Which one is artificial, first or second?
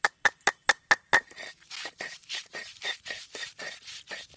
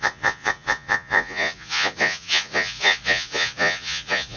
second